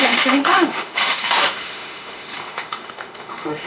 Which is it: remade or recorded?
remade